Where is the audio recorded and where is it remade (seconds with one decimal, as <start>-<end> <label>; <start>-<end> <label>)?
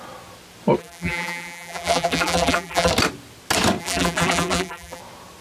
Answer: 0.0-0.8 recorded; 0.8-2.9 remade; 2.9-3.8 recorded; 3.8-5.0 remade; 5.0-5.4 recorded